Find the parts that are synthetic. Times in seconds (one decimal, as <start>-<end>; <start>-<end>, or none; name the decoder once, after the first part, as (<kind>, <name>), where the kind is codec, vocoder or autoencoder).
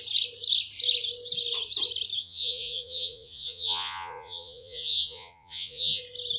2.2-6.0 (vocoder, Vocos)